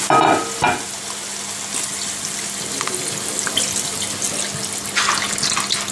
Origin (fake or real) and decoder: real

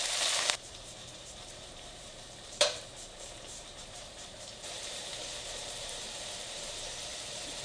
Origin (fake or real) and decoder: fake, vocoder, BigVGAN v2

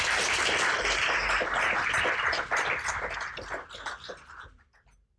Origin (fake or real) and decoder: real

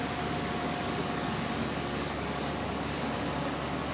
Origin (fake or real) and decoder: fake, codec, DAC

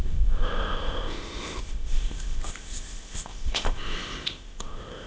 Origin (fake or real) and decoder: fake, codec, ZipCodec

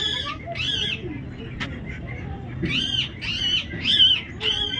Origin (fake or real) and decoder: real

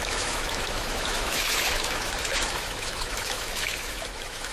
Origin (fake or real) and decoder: fake, autoencoder, DAC-VAE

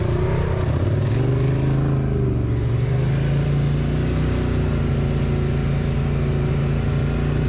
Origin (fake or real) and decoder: real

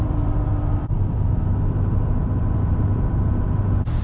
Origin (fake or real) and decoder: fake, vocoder, BigVGAN v2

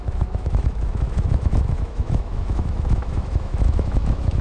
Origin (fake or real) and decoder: fake, autoencoder, DAC-VAE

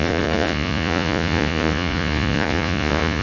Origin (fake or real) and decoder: fake, vocoder, Vocos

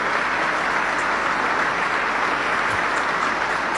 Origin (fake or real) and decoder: real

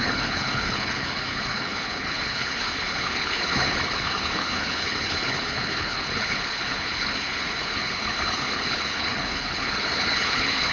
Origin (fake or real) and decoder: fake, codec, HILCodec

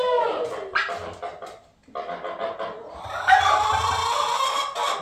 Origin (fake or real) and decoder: real